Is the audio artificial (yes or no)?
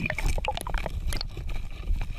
no